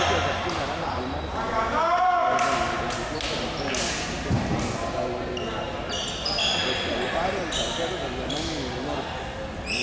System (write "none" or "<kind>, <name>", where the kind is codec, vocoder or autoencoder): none